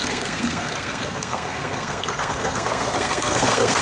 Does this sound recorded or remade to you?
remade